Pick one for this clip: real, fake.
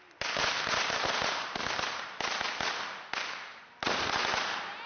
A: real